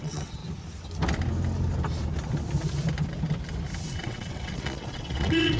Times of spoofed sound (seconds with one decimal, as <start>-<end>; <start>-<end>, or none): 0.0-0.4; 3.8-5.6